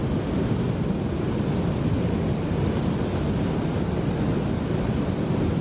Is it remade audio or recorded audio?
recorded